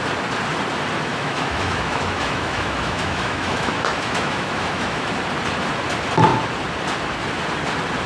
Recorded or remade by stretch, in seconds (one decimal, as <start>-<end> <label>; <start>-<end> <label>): 0.0-1.1 recorded; 1.1-5.1 remade; 5.1-8.1 recorded